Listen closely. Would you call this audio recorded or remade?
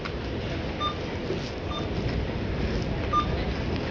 recorded